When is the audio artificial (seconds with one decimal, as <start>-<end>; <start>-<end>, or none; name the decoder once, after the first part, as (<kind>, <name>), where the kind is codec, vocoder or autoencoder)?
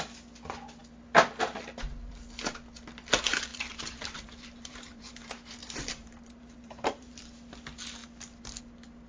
3.5-7.2 (vocoder, BigVGAN v2)